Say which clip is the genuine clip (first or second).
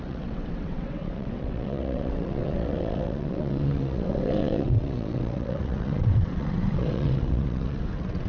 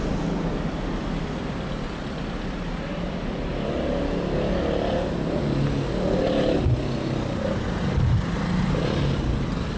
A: second